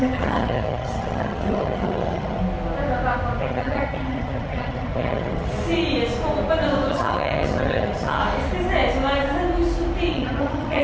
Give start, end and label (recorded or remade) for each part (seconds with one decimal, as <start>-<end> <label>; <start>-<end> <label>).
0.0-2.4 remade; 2.4-3.4 recorded; 3.4-5.5 remade; 5.5-6.9 recorded; 6.9-8.2 remade; 8.2-10.1 recorded; 10.1-10.8 remade